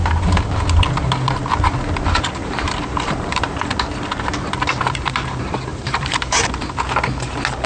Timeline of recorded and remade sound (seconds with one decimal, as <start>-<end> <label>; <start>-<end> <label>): 0.0-2.4 recorded; 2.4-3.6 remade; 3.6-5.7 recorded; 5.7-6.4 remade; 6.4-7.7 recorded